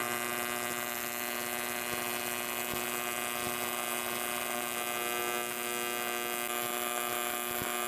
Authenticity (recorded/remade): recorded